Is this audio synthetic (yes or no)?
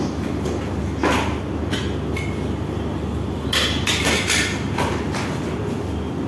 no